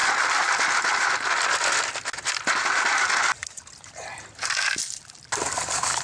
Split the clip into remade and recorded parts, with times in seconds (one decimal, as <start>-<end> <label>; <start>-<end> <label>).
0.0-6.0 recorded